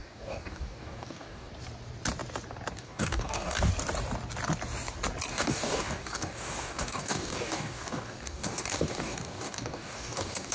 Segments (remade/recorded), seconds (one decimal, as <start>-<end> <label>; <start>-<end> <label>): 0.0-1.5 remade; 1.5-2.7 recorded; 2.7-3.7 remade; 3.7-5.3 recorded; 5.3-10.5 remade